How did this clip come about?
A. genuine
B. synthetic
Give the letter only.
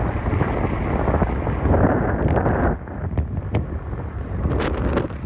A